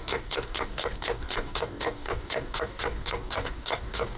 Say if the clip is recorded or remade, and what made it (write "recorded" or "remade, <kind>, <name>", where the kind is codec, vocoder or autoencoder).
remade, codec, DAC